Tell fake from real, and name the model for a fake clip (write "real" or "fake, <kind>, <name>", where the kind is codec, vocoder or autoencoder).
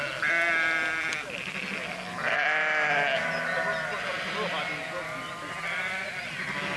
real